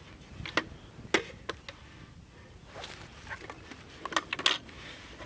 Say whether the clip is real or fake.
real